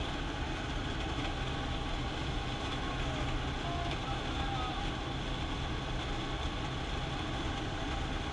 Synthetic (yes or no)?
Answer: no